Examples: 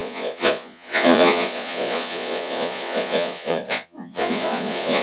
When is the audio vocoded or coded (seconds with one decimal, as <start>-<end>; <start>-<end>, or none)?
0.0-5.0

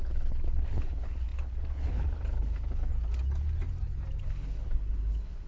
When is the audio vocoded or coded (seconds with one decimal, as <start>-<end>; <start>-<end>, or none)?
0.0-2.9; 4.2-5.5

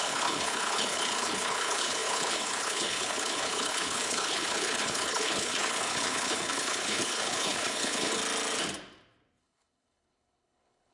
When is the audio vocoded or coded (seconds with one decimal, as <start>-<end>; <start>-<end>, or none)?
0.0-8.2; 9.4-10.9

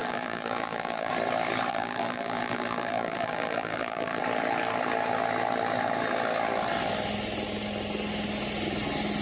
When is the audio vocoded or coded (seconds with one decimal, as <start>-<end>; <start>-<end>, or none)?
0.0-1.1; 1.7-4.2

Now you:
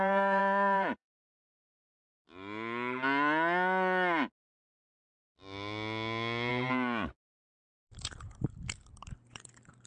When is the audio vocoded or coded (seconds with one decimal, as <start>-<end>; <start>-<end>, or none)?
0.0-1.9; 6.5-9.9

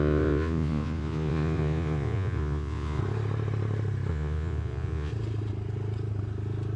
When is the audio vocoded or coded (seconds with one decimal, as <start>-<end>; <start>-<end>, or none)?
0.0-3.0; 4.1-5.1